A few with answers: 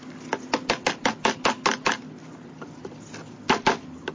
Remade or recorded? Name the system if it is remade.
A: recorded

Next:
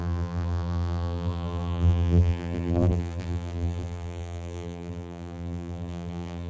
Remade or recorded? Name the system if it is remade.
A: remade, vocoder, BigVGAN v2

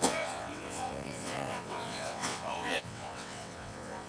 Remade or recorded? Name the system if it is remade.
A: remade, vocoder, WaveNeXt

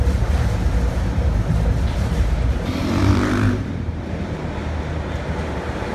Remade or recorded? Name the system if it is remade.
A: remade, vocoder, BigVGAN v2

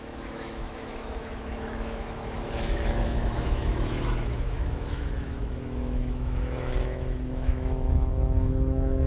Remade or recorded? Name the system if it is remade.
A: remade, autoencoder, DAC-VAE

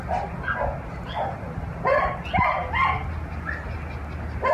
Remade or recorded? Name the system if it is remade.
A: recorded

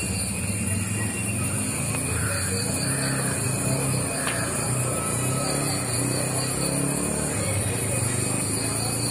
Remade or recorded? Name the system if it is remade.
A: recorded